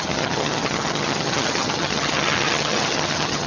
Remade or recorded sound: remade